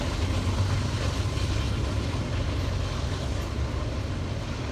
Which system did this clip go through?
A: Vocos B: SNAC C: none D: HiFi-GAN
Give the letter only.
C